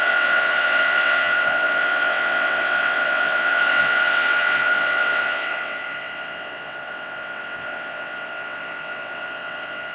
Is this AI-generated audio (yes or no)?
yes